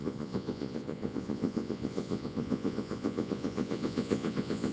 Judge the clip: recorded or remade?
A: remade